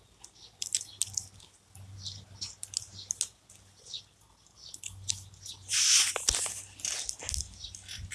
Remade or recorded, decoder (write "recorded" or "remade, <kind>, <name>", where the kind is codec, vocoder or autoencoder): recorded